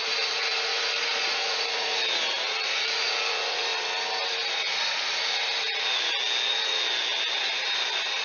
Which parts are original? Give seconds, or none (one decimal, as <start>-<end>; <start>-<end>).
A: 1.9-2.6; 3.7-4.5; 5.4-8.2